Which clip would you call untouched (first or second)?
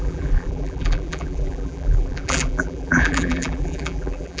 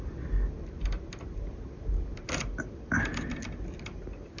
second